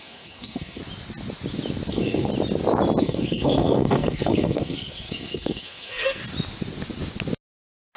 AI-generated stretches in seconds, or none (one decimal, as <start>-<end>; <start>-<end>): 0.0-0.8; 1.9-2.3; 3.0-6.2